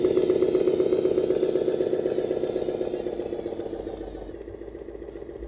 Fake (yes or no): no